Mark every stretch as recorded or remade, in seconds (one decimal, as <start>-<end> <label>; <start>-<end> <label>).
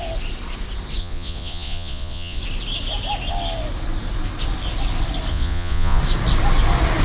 0.0-1.0 recorded; 1.0-2.4 remade; 2.4-5.3 recorded; 5.3-6.0 remade; 6.0-7.0 recorded